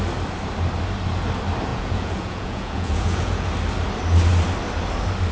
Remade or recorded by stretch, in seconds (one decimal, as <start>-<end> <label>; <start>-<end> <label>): 0.0-1.7 recorded; 1.7-3.5 remade; 3.5-5.3 recorded